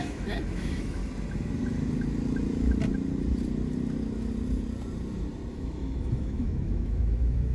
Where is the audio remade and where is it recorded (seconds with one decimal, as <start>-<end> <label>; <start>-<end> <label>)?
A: 0.0-1.0 remade; 1.0-5.5 recorded; 5.5-7.5 remade